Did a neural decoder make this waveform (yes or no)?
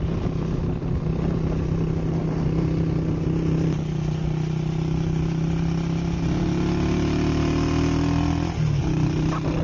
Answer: no